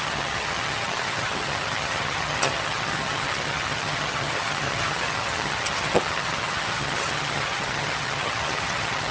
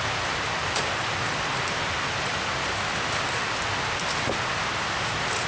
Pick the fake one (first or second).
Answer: first